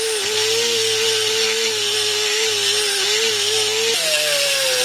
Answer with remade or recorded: recorded